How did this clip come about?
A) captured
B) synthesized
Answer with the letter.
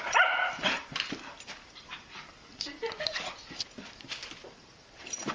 B